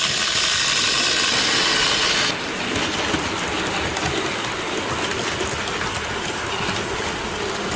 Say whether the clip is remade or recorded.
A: recorded